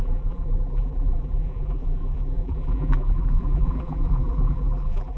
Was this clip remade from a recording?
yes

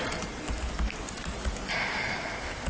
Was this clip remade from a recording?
no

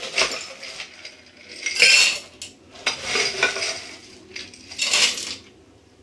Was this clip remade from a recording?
no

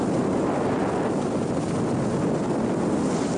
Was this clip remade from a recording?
no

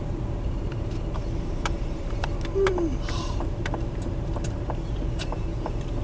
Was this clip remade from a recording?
yes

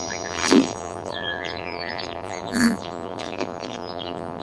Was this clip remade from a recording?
yes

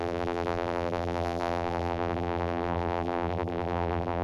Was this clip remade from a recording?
yes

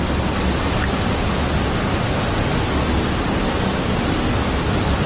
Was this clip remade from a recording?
no